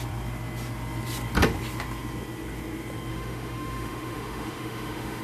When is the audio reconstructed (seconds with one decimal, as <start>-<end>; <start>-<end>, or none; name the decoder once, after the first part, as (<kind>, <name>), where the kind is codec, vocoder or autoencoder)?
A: 3.1-5.2 (autoencoder, DAC-VAE)